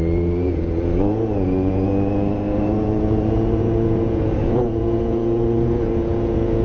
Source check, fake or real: fake